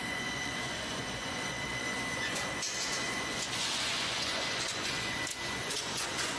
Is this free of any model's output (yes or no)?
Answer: no